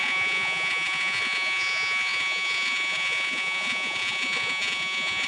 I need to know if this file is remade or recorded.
remade